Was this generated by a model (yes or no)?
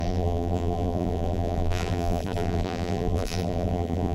yes